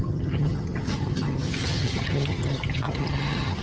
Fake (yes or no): yes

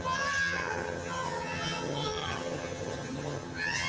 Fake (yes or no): yes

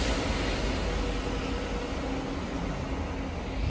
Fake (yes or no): no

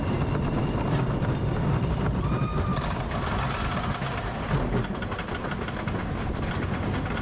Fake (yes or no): no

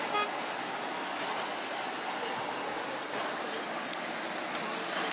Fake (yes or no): no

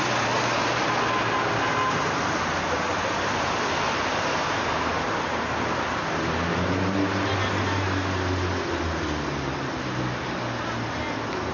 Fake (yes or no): no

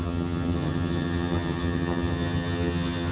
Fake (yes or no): yes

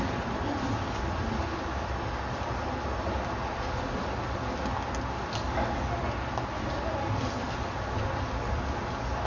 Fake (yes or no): no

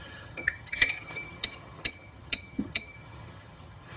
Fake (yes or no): yes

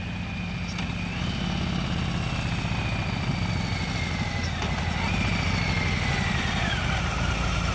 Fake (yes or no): no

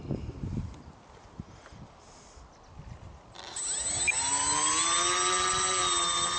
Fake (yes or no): no